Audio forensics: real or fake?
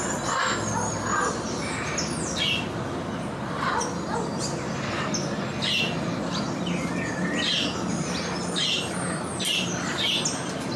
real